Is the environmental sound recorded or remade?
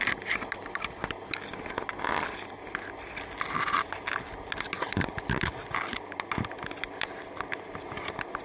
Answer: recorded